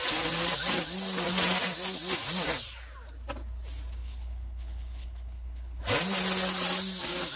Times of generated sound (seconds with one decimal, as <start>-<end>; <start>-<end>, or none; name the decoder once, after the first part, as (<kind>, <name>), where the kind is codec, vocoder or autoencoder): 4.0-5.8 (codec, HILCodec)